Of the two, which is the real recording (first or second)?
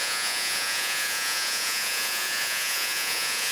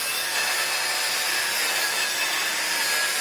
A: second